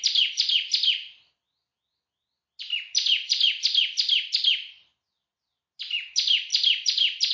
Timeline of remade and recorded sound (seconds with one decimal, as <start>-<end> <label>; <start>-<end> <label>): 0.0-7.3 recorded